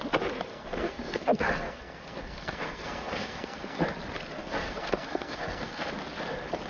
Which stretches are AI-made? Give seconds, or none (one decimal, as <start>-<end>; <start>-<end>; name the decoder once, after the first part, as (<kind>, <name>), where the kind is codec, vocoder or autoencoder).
0.5-3.8 (codec, SNAC); 4.4-5.9